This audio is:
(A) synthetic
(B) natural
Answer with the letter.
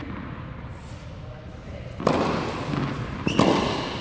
B